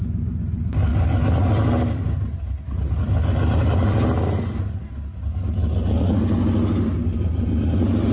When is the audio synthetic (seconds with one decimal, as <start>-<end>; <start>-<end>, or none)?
none